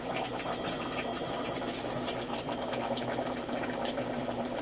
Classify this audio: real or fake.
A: fake